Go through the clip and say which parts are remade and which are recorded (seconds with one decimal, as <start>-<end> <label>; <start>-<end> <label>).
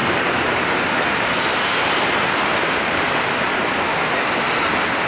0.0-3.1 remade; 3.1-5.1 recorded